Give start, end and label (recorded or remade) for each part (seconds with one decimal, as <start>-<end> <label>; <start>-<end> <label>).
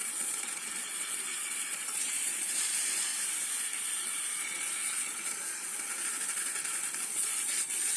0.0-3.1 remade; 3.1-4.4 recorded; 4.4-8.0 remade